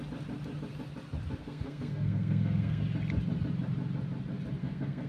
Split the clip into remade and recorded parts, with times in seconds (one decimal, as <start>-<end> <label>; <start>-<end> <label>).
0.0-1.4 recorded; 1.4-2.8 remade; 2.8-4.6 recorded; 4.6-5.1 remade